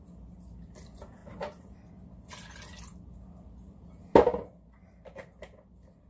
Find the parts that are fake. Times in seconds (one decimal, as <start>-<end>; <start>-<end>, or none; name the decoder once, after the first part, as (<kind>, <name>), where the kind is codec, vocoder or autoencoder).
none